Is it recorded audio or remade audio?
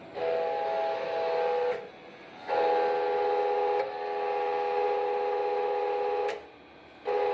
recorded